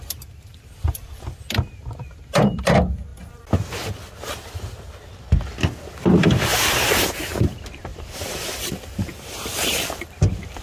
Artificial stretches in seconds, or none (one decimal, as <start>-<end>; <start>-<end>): 0.0-3.1; 5.9-6.5; 7.4-10.6